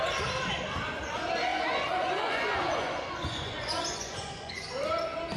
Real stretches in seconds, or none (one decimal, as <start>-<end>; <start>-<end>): 0.0-1.5; 4.7-5.4